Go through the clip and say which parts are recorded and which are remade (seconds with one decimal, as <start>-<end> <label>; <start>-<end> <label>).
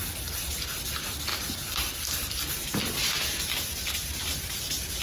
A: 0.0-0.8 remade; 0.8-5.0 recorded